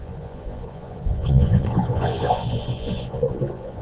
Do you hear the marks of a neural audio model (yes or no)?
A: yes